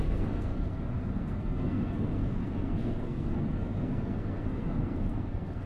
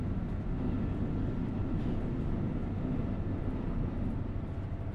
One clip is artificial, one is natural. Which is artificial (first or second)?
first